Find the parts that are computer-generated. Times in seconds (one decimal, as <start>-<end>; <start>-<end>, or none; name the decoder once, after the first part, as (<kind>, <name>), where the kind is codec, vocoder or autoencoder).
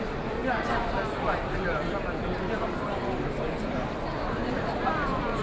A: 0.0-0.4 (vocoder, BigVGAN v2); 3.6-5.4